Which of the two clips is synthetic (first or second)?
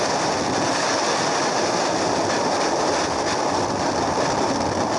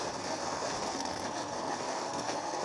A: second